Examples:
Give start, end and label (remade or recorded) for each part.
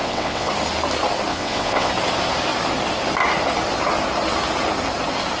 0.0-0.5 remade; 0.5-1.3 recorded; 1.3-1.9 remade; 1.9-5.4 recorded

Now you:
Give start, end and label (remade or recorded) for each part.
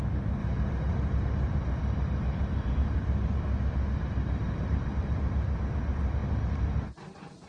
0.0-0.4 recorded; 0.4-4.9 remade; 4.9-7.5 recorded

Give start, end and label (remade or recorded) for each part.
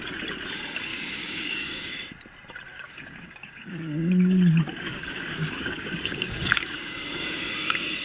0.0-0.9 recorded; 0.9-1.9 remade; 1.9-2.7 recorded; 2.7-7.5 remade; 7.5-8.0 recorded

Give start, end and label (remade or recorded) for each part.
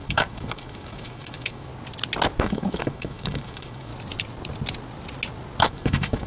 0.0-1.7 remade; 1.7-2.4 recorded; 2.4-3.9 remade; 3.9-5.6 recorded; 5.6-6.3 remade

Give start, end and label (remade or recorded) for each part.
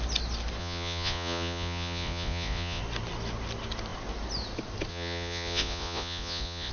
0.0-0.6 recorded; 0.6-2.8 remade; 2.8-4.9 recorded; 4.9-6.7 remade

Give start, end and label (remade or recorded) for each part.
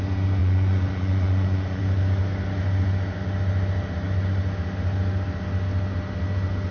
0.0-0.4 recorded; 0.4-1.8 remade; 1.8-6.7 recorded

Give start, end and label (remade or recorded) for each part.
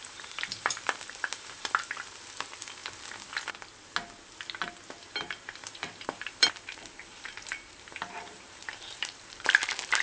0.0-2.8 remade; 2.8-4.7 recorded; 4.7-10.0 remade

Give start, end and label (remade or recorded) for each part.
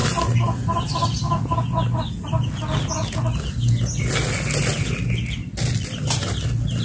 0.0-6.8 recorded